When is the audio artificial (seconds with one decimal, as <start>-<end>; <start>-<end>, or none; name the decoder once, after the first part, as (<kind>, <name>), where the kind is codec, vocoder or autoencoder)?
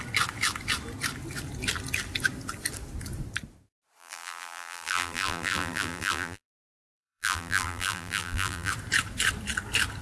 4.0-8.7 (vocoder, BigVGAN v2)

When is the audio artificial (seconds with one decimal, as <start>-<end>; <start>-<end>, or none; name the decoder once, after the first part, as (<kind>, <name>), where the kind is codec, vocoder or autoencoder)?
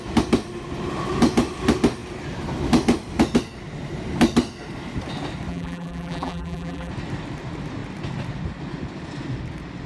5.5-6.9 (vocoder, BigVGAN v2)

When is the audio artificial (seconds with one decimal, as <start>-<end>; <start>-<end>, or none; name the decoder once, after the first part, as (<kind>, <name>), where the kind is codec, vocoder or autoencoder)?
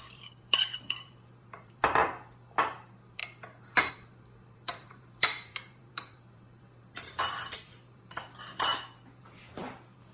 0.0-3.2 (vocoder, BigVGAN v2); 3.9-8.7; 9.2-10.1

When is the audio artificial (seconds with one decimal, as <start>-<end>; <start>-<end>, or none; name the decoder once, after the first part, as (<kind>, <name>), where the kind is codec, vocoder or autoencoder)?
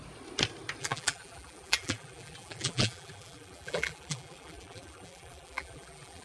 0.8-6.2 (vocoder, BigVGAN v2)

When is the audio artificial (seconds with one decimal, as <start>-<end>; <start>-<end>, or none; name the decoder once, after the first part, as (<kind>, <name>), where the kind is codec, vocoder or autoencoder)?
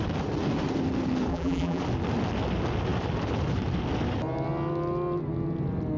1.3-1.8 (vocoder, BigVGAN v2)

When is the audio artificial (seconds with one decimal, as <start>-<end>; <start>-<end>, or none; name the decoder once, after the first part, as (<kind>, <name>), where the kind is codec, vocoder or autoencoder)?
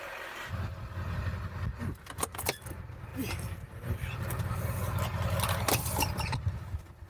none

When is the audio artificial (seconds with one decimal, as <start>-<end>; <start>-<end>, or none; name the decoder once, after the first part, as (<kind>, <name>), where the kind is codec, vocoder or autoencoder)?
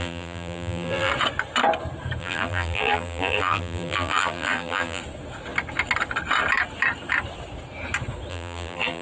0.0-1.1 (vocoder, BigVGAN v2); 2.2-5.0; 8.3-9.0